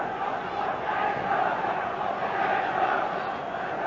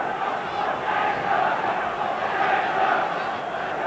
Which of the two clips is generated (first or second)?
first